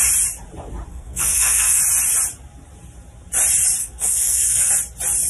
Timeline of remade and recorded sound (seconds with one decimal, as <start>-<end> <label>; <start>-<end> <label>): 0.0-0.9 recorded; 0.9-1.8 remade; 1.8-3.8 recorded; 3.8-4.7 remade; 4.7-5.3 recorded